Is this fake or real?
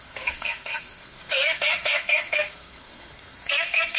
fake